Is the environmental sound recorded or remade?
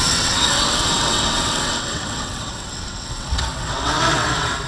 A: remade